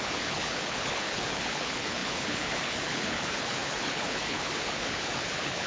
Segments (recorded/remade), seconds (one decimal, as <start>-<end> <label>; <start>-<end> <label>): 0.0-5.7 remade

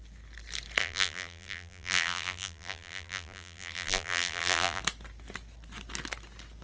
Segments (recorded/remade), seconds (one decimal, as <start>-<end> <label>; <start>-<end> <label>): 0.0-0.8 recorded; 0.8-4.8 remade; 4.8-6.6 recorded

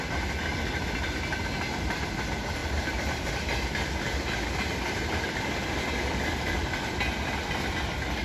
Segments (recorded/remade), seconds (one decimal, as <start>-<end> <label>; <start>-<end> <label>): 0.0-8.2 recorded

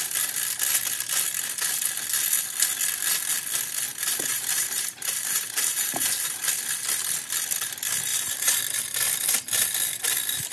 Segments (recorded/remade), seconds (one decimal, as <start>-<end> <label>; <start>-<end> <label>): 0.0-3.9 recorded; 3.9-6.4 remade; 6.4-8.1 recorded; 8.1-8.6 remade; 8.6-10.5 recorded

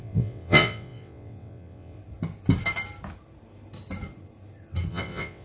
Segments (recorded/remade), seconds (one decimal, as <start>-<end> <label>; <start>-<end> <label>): 0.0-2.0 remade; 2.0-4.9 recorded; 4.9-5.4 remade

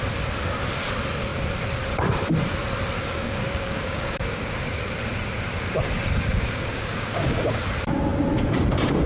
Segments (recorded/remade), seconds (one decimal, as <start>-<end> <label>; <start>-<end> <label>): 0.0-3.0 recorded; 3.0-4.9 remade; 4.9-6.3 recorded; 6.3-7.6 remade; 7.6-9.1 recorded

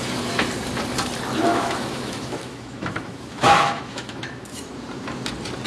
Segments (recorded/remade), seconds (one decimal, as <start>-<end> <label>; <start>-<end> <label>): 0.0-1.5 recorded; 1.5-4.7 remade; 4.7-5.7 recorded

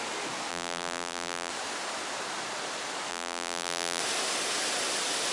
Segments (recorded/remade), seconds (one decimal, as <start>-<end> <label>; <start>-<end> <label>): 0.0-0.5 recorded; 0.5-1.5 remade; 1.5-3.1 recorded; 3.1-4.0 remade; 4.0-5.3 recorded